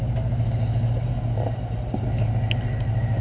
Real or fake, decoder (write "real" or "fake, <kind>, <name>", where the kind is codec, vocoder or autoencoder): real